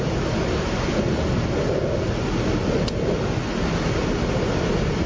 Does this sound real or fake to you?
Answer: real